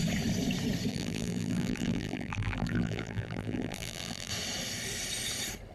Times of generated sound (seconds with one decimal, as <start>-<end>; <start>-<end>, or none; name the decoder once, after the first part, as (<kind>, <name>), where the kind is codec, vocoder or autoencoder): 0.9-4.3 (vocoder, BigVGAN v2)